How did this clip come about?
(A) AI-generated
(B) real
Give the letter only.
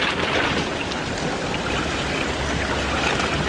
B